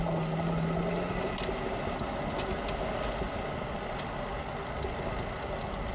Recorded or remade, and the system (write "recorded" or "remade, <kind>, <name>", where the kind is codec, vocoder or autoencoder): recorded